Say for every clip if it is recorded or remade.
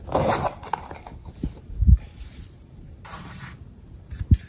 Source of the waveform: remade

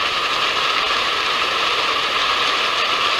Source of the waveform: remade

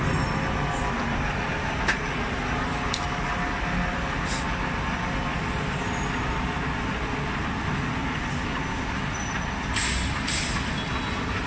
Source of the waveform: recorded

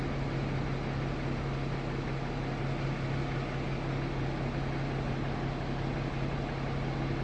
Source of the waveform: recorded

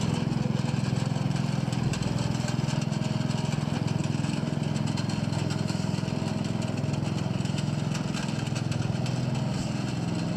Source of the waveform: recorded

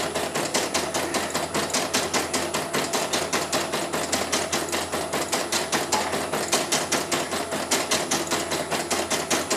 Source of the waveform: recorded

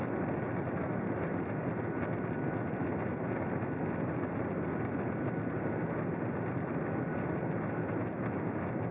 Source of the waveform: recorded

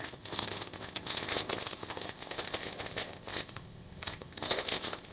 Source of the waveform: remade